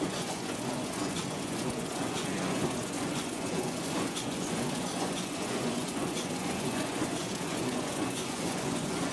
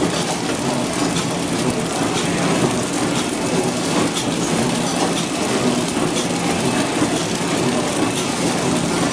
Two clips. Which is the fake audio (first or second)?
first